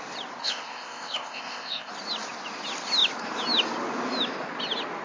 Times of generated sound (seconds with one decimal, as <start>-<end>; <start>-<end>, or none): 0.4-1.9